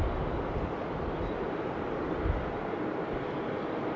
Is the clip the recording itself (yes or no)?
yes